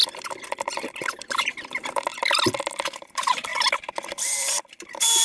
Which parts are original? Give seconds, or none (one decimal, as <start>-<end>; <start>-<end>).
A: 3.5-4.1